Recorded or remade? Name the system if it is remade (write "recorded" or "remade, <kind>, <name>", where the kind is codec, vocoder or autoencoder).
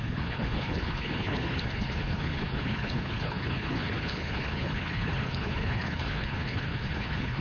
remade, codec, HILCodec